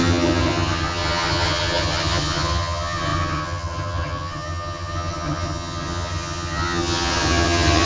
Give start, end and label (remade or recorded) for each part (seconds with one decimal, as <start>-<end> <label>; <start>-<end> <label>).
0.0-7.9 remade

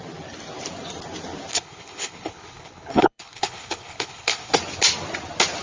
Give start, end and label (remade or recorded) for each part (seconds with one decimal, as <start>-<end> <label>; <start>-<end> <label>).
0.0-1.5 recorded; 1.5-4.5 remade; 4.5-5.6 recorded

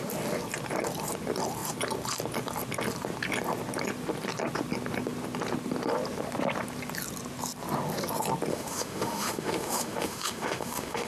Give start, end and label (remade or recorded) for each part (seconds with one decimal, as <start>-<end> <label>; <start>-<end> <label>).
0.0-8.5 recorded; 8.5-11.1 remade

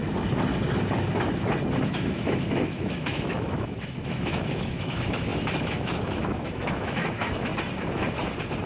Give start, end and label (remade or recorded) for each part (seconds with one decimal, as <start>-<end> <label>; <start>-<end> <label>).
0.0-1.9 recorded; 1.9-7.5 remade; 7.5-8.7 recorded

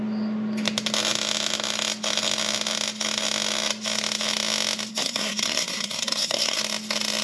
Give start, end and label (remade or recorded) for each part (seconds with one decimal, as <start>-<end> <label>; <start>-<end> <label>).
0.0-4.9 recorded; 4.9-6.6 remade; 6.6-7.2 recorded

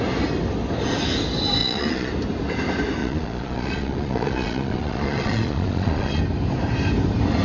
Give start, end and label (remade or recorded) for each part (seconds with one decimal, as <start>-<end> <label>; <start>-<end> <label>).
0.0-1.6 recorded; 1.6-2.1 remade; 2.1-3.0 recorded; 3.0-6.2 remade; 6.2-7.4 recorded

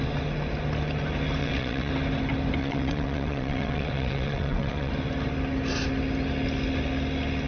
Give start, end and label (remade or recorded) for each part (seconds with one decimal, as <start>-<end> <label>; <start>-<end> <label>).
0.0-1.4 recorded; 1.4-1.9 remade; 1.9-2.6 recorded; 2.6-4.9 remade; 4.9-7.5 recorded